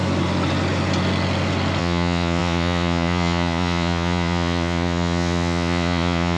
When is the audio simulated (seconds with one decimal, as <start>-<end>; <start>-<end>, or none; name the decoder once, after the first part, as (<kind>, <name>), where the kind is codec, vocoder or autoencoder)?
1.8-6.4 (vocoder, Vocos)

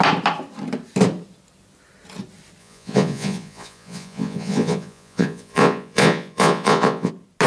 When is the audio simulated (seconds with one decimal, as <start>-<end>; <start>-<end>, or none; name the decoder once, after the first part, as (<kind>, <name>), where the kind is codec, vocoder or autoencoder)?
2.6-7.1 (vocoder, Vocos)

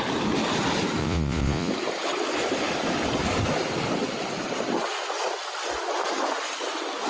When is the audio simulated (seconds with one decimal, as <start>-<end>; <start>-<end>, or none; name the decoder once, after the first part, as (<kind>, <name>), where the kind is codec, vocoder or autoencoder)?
1.0-1.7 (vocoder, Vocos)

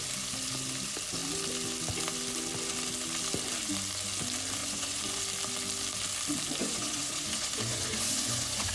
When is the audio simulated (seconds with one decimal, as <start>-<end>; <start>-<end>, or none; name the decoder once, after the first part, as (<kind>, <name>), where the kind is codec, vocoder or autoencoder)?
4.6-5.2 (vocoder, Vocos); 6.6-8.7